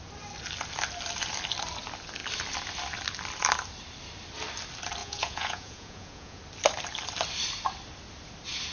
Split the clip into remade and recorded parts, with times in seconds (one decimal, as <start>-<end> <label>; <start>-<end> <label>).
0.0-5.0 recorded; 5.0-6.4 remade; 6.4-8.7 recorded